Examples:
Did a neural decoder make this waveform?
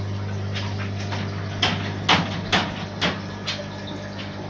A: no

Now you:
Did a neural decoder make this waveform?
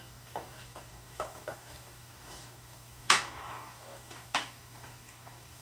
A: yes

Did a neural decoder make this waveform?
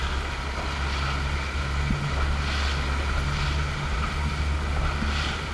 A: no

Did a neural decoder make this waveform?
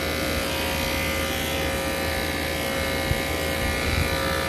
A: no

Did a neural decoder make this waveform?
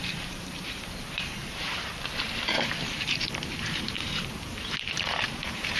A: yes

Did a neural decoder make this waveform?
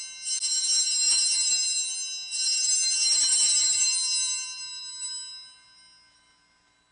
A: no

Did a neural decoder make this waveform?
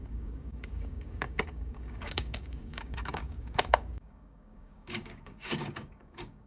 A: yes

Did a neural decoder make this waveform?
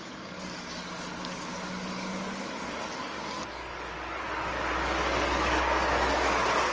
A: yes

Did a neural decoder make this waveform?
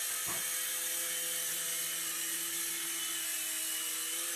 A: no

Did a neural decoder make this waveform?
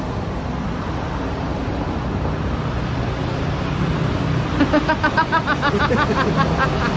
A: no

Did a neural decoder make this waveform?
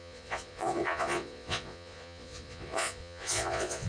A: yes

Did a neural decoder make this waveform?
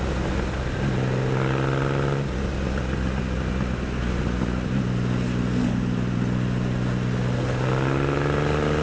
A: no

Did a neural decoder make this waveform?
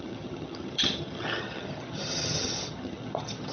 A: yes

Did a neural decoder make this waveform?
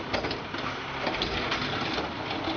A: no